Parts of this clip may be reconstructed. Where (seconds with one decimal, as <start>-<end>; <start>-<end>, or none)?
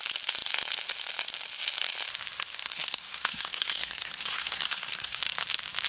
2.6-5.2